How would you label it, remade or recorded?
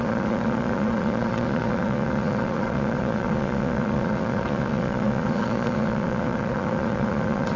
remade